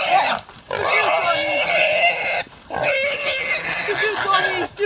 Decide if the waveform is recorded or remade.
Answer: recorded